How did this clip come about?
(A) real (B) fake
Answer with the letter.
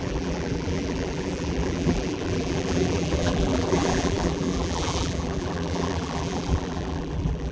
B